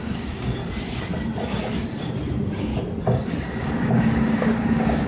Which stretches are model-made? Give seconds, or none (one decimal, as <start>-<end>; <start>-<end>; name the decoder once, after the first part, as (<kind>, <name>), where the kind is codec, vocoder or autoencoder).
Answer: 0.0-0.6 (codec, DAC); 2.3-2.7; 3.6-5.1